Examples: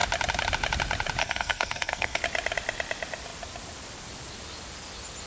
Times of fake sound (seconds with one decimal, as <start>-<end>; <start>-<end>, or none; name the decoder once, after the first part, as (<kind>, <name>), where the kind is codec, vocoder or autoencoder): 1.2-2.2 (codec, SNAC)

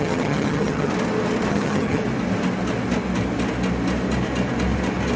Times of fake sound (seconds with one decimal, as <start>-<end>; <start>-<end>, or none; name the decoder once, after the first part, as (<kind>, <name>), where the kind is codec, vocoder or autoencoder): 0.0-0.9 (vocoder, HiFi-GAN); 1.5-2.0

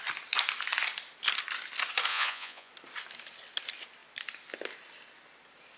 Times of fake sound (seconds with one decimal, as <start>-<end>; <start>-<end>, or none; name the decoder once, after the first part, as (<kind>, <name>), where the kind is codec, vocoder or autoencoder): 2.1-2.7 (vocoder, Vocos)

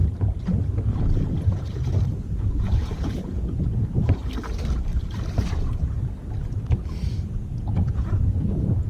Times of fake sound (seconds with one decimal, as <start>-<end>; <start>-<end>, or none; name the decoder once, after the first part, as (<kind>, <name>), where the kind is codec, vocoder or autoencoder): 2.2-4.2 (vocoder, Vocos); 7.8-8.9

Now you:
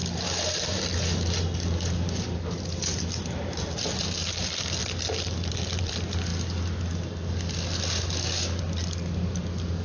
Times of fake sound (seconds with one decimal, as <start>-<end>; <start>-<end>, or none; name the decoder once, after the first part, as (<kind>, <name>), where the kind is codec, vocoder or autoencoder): 0.0-4.8 (vocoder, BigVGAN v2); 5.8-6.3; 8.6-9.8